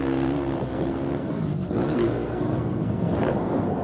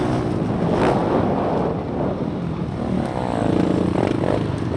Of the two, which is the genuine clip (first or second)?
second